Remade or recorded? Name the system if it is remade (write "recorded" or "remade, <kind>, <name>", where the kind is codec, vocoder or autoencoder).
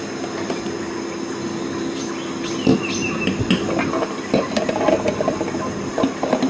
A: recorded